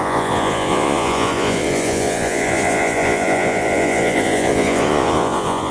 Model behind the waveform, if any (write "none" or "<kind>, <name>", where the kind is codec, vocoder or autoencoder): vocoder, Vocos